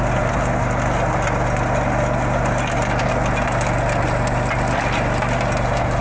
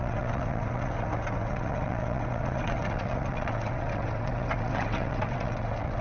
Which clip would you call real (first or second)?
first